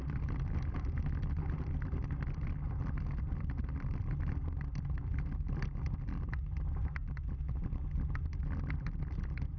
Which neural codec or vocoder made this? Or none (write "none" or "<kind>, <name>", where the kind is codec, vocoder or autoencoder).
none